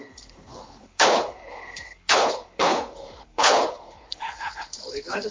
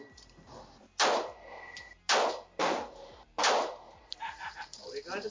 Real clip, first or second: second